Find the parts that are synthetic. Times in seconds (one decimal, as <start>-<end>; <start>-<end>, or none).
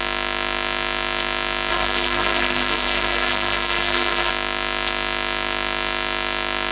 1.7-4.3